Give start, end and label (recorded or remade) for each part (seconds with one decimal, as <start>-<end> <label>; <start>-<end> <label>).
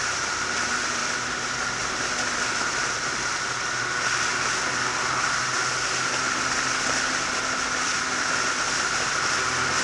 0.0-9.8 recorded